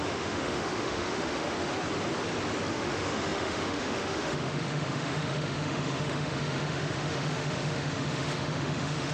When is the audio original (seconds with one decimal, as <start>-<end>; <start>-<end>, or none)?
1.7-2.7